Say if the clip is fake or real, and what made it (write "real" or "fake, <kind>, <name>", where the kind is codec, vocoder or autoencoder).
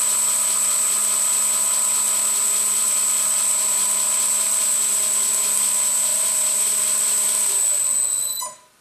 real